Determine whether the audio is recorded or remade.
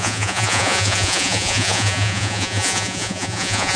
remade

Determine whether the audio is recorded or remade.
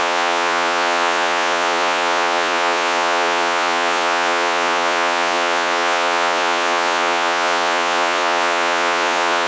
remade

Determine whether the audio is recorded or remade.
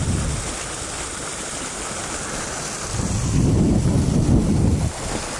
recorded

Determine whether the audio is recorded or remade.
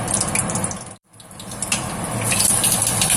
remade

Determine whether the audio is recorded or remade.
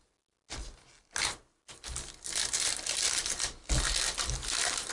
recorded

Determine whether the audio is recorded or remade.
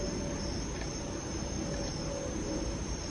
recorded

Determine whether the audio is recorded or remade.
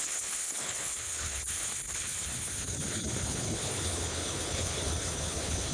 remade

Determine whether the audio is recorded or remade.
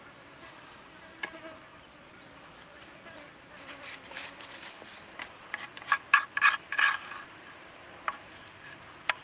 recorded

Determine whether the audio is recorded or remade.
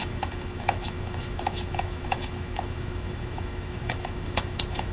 remade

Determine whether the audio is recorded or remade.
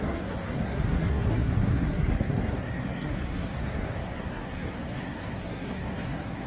remade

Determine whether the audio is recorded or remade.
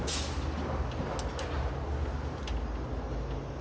recorded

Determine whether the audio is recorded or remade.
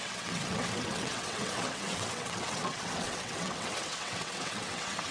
remade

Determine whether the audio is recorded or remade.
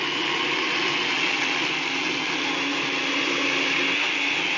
recorded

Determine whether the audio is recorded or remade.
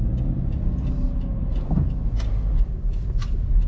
recorded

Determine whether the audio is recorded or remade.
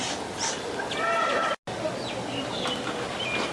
recorded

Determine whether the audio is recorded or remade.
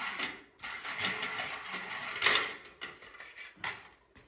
recorded